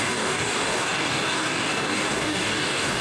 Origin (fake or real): fake